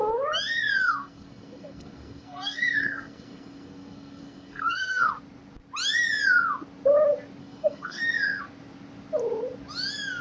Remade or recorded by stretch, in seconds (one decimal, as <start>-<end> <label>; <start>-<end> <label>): 0.0-0.8 recorded; 0.8-5.1 remade; 5.1-7.4 recorded; 7.4-8.0 remade; 8.0-10.2 recorded

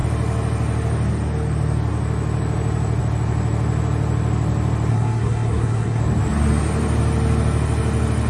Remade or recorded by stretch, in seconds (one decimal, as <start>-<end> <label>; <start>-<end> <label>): 0.0-4.9 recorded; 4.9-6.0 remade; 6.0-8.3 recorded